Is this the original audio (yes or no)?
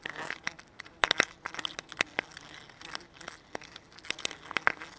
yes